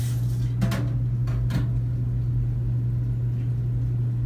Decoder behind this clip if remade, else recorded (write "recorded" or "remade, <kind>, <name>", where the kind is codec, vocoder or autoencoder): recorded